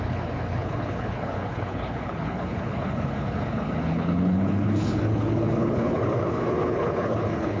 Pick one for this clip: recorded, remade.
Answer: remade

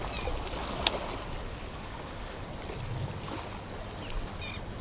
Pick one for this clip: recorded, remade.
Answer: recorded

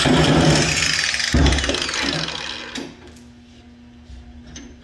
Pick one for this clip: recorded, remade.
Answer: recorded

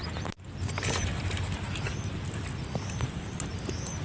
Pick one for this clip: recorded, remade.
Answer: recorded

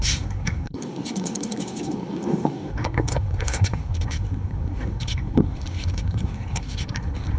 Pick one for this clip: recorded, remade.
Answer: remade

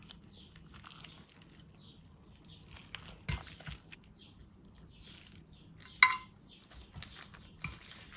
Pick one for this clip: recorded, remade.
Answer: recorded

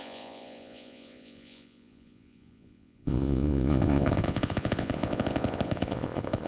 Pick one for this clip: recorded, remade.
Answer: remade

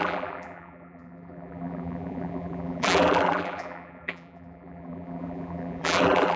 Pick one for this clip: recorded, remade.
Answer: remade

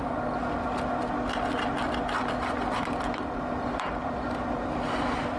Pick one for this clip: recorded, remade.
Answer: recorded